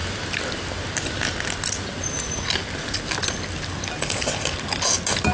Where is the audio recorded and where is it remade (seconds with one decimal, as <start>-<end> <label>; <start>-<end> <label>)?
0.0-5.3 recorded